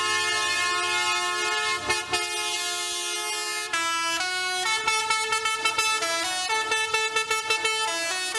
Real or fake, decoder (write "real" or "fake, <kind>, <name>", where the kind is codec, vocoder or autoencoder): real